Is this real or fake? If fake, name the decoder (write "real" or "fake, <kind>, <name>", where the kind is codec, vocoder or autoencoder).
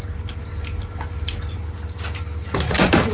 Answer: real